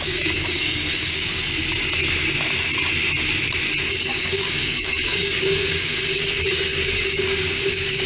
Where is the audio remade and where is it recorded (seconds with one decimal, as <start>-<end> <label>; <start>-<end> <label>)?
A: 0.0-1.4 remade; 1.4-3.9 recorded; 3.9-8.1 remade